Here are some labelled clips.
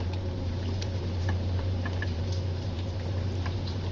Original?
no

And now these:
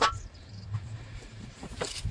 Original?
no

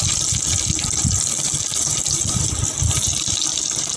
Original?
no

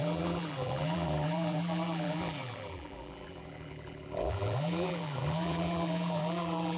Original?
no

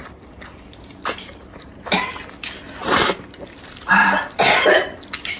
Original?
yes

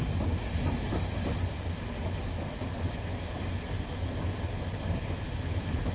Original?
yes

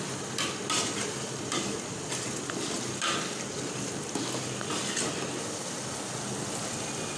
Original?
yes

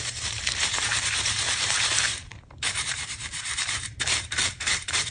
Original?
no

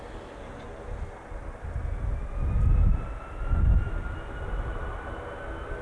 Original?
yes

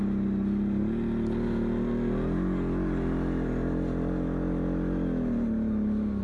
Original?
yes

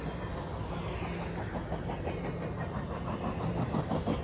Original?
yes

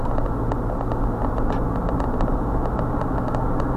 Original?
yes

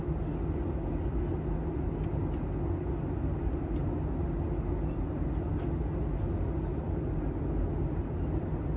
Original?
yes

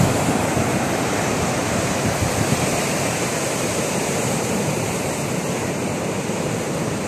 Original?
no